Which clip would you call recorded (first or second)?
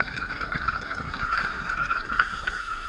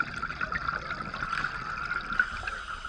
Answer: second